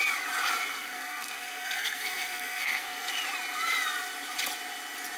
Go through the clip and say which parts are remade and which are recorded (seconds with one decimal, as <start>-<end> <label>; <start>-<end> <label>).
0.0-0.7 recorded; 0.7-3.1 remade; 3.1-5.2 recorded